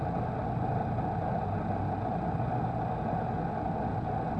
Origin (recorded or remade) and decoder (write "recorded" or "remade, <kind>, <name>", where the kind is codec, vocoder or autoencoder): recorded